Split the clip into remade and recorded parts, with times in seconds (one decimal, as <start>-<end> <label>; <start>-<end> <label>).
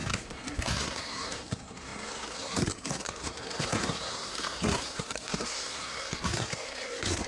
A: 0.0-7.3 remade